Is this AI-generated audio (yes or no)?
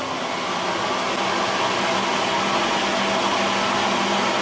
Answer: no